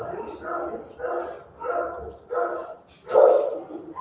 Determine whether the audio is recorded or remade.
recorded